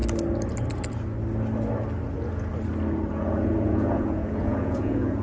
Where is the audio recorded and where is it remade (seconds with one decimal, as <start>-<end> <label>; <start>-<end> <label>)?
0.0-3.1 recorded; 3.1-5.2 remade

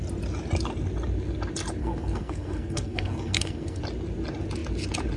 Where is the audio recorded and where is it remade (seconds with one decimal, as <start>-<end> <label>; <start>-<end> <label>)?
0.0-1.8 recorded; 1.8-3.8 remade; 3.8-5.2 recorded

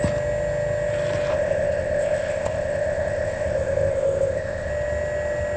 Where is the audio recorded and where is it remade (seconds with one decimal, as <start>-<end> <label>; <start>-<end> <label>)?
0.0-1.3 recorded; 1.3-4.7 remade; 4.7-5.6 recorded

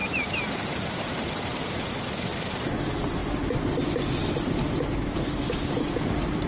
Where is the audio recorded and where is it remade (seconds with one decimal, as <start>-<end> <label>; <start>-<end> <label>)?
0.0-1.8 remade; 1.8-2.3 recorded; 2.3-2.8 remade; 2.8-6.5 recorded

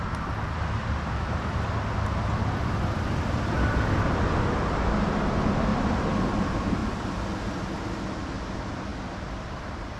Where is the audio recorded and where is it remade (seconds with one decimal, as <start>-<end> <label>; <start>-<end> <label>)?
0.0-5.7 recorded; 5.7-6.3 remade; 6.3-10.0 recorded

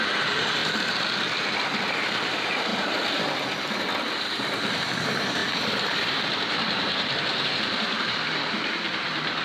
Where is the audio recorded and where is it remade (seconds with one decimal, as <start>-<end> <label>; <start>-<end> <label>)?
0.0-0.6 remade; 0.6-1.9 recorded; 1.9-2.7 remade; 2.7-4.4 recorded; 4.4-9.4 remade